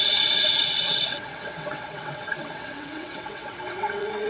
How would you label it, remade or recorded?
remade